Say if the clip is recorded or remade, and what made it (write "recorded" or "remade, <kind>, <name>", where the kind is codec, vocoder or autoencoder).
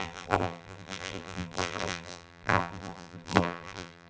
remade, vocoder, BigVGAN v2